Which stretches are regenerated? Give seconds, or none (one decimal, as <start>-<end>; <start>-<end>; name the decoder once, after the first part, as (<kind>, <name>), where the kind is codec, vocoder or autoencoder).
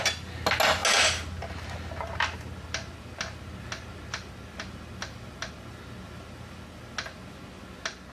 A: none